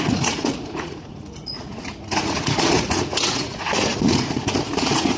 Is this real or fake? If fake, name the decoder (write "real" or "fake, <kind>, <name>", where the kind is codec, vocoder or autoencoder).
fake, vocoder, Vocos